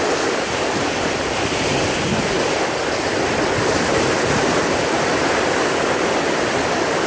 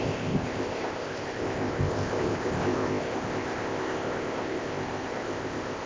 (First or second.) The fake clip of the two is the second